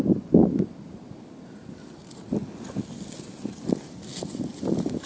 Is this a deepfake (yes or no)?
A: no